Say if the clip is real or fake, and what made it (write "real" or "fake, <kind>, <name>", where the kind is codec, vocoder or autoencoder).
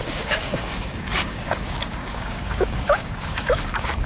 fake, codec, DAC